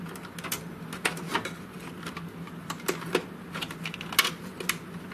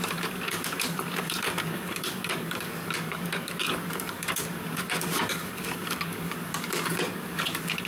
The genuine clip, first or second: first